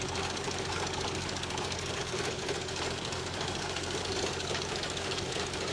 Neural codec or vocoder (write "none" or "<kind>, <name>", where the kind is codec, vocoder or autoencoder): codec, DAC